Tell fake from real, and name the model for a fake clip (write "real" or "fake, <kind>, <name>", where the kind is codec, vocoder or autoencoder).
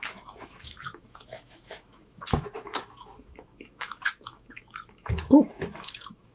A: fake, autoencoder, DAC-VAE